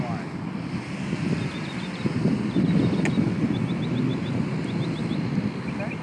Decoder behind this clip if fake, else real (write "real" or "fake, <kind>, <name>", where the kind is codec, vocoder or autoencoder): real